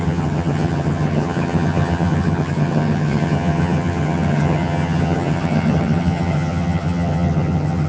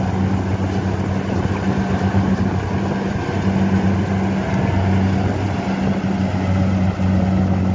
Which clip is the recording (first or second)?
second